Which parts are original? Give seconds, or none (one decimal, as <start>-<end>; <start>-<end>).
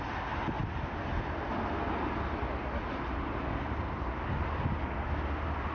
0.0-5.7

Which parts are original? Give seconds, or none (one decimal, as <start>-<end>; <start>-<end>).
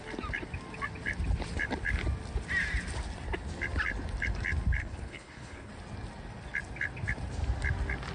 0.0-4.8; 5.7-8.1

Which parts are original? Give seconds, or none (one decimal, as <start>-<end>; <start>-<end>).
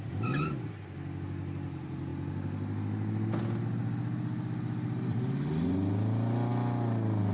0.0-7.3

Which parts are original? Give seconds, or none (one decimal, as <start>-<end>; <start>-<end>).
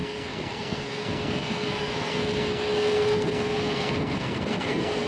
none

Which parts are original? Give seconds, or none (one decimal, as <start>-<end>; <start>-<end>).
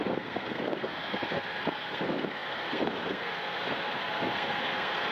none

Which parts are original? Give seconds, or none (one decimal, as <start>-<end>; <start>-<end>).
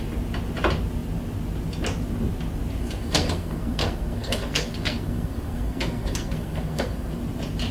0.0-2.8; 7.2-7.7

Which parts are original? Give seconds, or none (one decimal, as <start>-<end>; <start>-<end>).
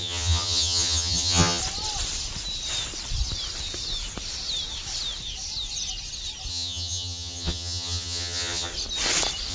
1.6-6.5; 8.7-9.5